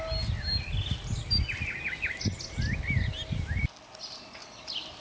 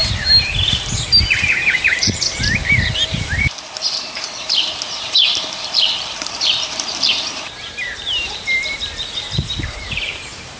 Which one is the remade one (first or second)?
second